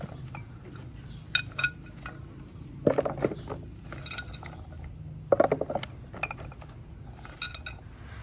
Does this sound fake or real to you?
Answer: real